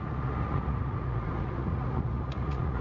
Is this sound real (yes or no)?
no